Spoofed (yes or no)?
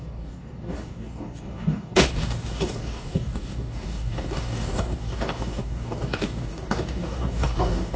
yes